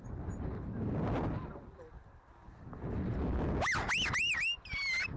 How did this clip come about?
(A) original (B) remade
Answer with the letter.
A